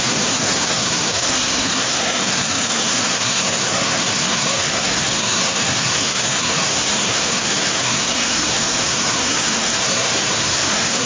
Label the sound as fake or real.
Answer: fake